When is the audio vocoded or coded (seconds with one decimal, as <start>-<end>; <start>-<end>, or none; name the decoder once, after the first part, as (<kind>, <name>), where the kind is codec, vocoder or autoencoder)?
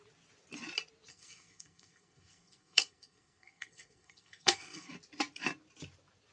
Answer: 1.1-4.9 (codec, SNAC)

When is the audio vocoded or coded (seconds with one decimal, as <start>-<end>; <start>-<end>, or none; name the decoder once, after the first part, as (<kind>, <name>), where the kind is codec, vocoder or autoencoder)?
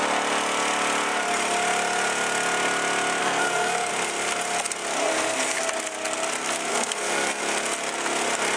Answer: 3.2-3.9 (codec, SNAC); 5.0-5.6; 6.7-7.4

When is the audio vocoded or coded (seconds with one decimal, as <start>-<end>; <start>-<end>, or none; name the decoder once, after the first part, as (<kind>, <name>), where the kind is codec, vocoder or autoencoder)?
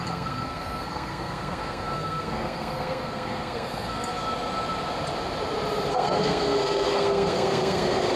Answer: 0.0-4.1 (codec, SNAC); 5.9-8.2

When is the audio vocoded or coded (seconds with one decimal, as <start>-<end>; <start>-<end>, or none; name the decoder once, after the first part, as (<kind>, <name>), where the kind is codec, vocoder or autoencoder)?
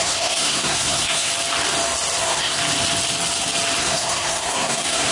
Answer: 0.0-1.3 (codec, SNAC); 2.2-2.6; 3.8-5.1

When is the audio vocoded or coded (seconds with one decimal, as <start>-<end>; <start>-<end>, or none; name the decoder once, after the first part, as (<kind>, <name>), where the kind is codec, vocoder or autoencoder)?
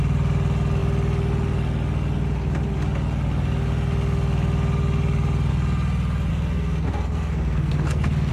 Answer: 6.3-8.3 (codec, SNAC)